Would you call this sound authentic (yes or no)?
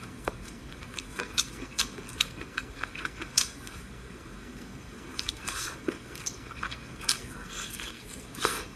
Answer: no